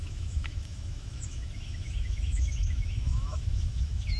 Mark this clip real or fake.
fake